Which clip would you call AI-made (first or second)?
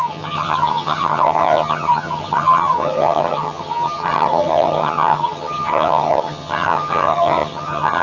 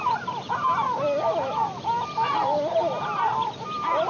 first